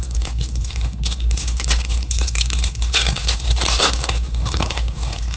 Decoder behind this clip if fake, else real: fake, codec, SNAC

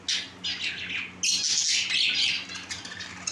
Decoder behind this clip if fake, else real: real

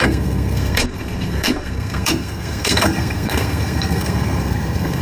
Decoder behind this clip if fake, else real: fake, codec, SNAC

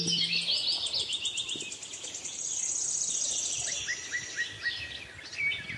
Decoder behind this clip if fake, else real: real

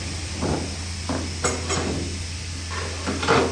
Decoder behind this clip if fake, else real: real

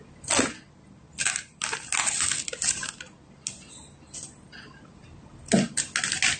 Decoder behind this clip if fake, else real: real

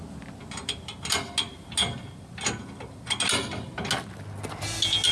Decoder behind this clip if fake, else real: real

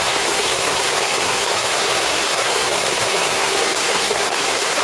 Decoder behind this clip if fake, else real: fake, codec, SNAC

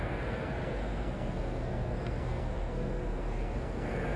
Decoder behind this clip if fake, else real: fake, codec, SNAC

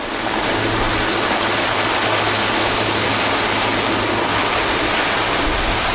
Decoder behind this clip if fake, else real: real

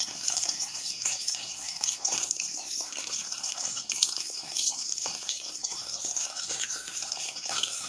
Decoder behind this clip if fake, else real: fake, codec, SNAC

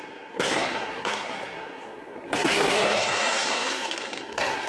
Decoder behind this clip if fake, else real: fake, codec, SNAC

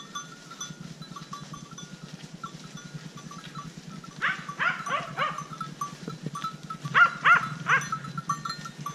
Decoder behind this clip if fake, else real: real